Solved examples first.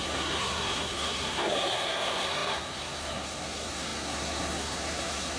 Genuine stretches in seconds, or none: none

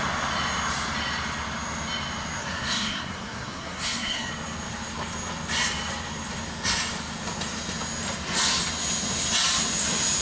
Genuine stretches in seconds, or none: 0.0-2.4; 4.3-10.2

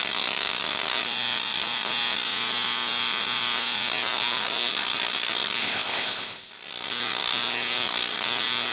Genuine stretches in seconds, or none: 0.0-5.6; 6.5-8.7

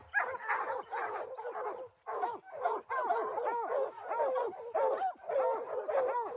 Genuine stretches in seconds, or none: 0.0-6.4

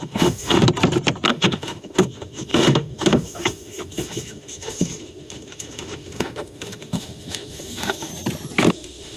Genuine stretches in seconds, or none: 0.6-1.3; 8.1-8.7